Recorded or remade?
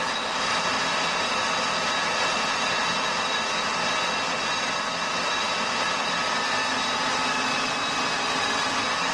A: recorded